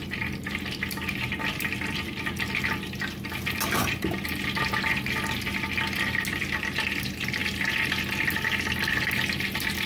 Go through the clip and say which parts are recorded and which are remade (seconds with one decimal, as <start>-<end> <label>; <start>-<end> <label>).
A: 0.0-9.9 recorded